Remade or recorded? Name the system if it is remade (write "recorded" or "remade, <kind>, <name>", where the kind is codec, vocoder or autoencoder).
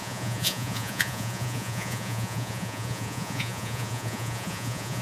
remade, vocoder, Vocos